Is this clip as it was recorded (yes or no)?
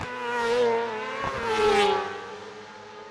yes